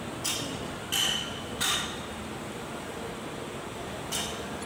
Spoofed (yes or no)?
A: no